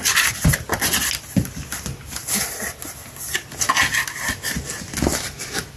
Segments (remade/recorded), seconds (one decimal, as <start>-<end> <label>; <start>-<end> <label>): 0.0-5.8 recorded